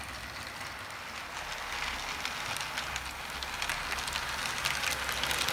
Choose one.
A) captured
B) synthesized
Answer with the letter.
A